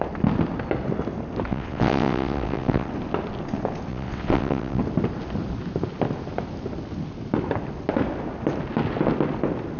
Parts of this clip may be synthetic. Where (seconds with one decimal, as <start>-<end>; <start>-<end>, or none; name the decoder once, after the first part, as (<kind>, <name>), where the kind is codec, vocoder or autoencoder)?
1.5-2.9 (vocoder, WaveNeXt); 3.9-4.8